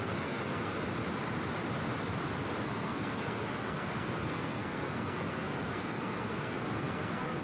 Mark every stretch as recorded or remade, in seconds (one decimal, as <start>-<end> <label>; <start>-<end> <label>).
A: 0.0-0.7 remade; 0.7-2.6 recorded; 2.6-7.4 remade